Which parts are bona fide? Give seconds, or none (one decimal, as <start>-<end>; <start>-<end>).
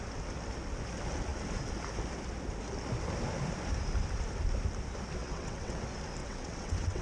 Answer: 0.0-5.2; 5.8-6.2